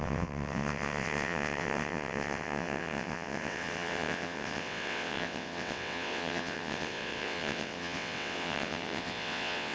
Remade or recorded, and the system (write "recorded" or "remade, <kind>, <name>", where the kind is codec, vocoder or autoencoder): remade, vocoder, WaveNeXt